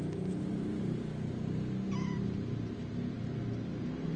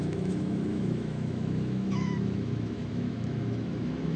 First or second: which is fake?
second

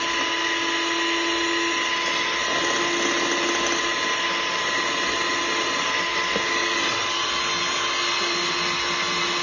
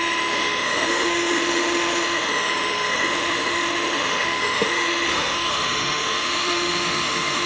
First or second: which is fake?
second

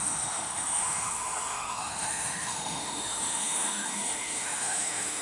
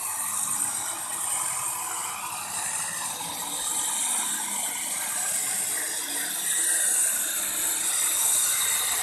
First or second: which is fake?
first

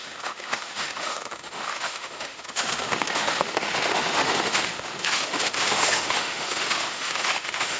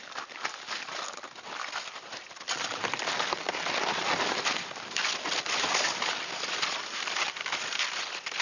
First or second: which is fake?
first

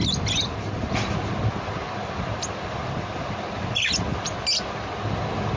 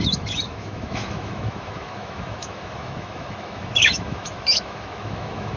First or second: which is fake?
second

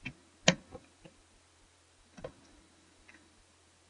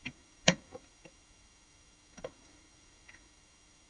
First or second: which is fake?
second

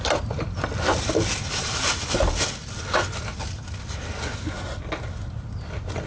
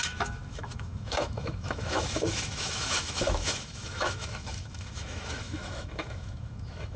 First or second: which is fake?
second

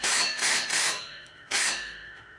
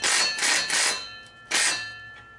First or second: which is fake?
first